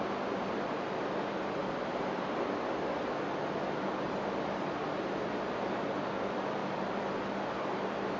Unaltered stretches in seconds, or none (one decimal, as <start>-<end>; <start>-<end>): 0.0-6.6